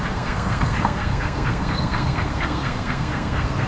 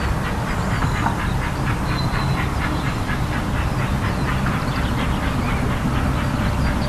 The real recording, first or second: second